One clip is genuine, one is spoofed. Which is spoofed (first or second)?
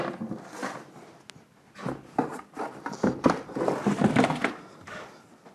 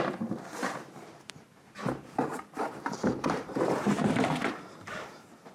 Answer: second